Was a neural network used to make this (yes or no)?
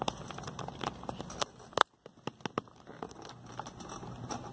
no